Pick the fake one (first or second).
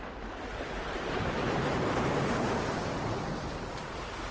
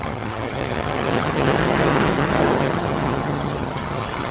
second